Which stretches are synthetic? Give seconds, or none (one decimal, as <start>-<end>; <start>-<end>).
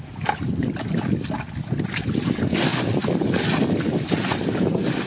none